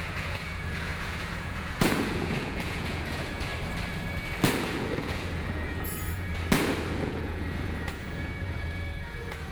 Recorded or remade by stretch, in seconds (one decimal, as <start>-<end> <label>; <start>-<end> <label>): 0.0-3.5 remade; 3.5-4.6 recorded; 4.6-6.3 remade; 6.3-6.9 recorded; 6.9-9.5 remade